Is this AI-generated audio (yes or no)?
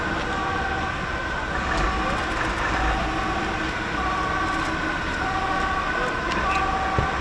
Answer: no